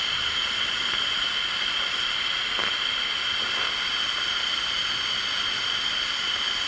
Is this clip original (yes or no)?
yes